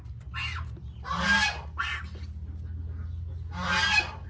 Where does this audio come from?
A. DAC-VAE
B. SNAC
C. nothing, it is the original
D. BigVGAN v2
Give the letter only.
C